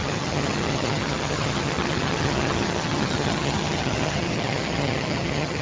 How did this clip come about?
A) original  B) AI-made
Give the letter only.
B